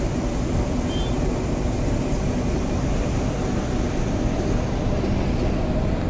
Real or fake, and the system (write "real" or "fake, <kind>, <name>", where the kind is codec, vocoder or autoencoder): real